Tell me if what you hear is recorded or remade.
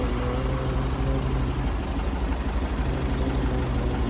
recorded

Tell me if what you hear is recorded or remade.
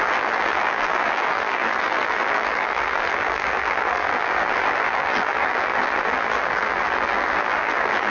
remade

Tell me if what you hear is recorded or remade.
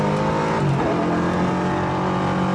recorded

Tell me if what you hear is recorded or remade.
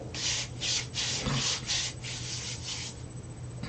recorded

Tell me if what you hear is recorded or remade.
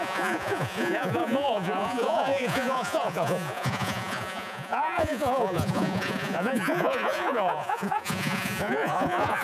remade